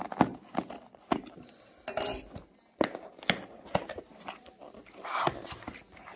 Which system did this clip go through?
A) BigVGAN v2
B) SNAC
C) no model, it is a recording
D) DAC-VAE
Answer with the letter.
C